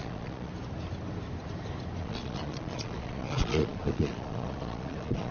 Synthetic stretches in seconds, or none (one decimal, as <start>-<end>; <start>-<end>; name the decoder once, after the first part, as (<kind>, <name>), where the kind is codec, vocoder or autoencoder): 0.0-0.5 (vocoder, Vocos); 2.0-5.3